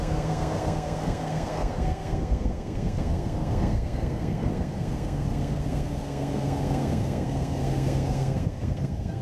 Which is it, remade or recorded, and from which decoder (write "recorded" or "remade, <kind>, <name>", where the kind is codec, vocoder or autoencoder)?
remade, codec, SNAC